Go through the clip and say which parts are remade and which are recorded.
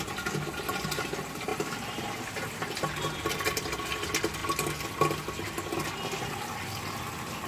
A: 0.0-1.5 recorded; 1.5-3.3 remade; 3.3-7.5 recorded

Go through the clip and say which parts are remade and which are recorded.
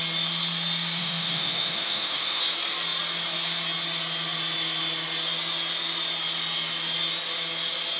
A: 0.0-1.0 recorded; 1.0-2.4 remade; 2.4-8.0 recorded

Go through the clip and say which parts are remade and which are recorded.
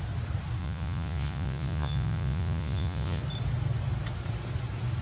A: 0.0-0.6 recorded; 0.6-3.2 remade; 3.2-5.0 recorded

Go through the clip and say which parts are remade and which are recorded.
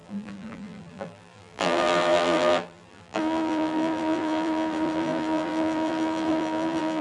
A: 0.0-7.0 remade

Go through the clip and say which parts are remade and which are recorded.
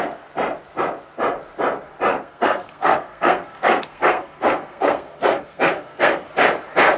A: 0.0-2.1 recorded; 2.1-6.3 remade; 6.3-7.0 recorded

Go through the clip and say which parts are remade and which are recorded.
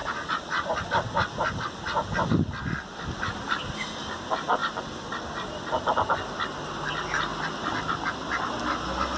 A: 0.0-9.2 recorded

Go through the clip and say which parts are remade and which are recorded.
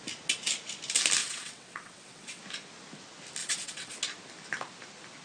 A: 0.0-1.2 recorded; 1.2-2.4 remade; 2.4-3.4 recorded; 3.4-4.0 remade; 4.0-5.2 recorded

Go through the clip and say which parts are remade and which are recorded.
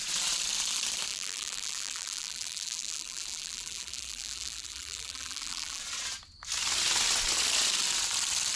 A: 0.0-1.1 recorded; 1.1-5.8 remade; 5.8-8.6 recorded